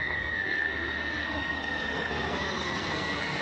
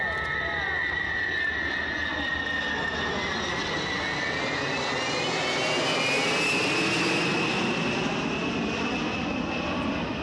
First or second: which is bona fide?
second